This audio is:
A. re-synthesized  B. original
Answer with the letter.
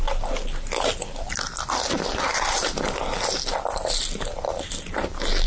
B